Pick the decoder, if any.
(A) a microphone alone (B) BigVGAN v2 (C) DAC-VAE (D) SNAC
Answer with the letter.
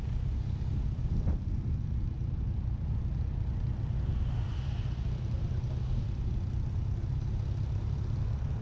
A